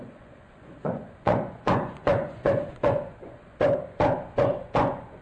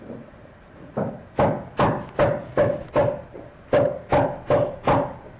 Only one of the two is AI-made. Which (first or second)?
first